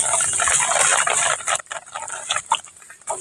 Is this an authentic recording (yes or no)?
yes